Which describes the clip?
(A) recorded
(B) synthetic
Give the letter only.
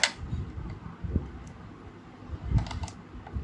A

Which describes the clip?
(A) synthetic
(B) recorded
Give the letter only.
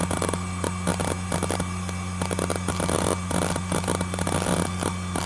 B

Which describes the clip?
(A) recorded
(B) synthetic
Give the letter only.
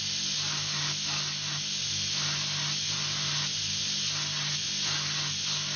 A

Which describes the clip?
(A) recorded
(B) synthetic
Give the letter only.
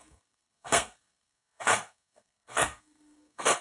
B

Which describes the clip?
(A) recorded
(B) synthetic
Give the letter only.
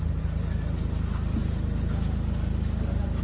A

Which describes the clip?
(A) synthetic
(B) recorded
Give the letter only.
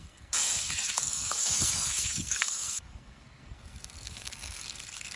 A